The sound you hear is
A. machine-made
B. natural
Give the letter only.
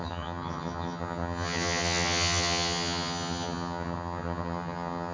A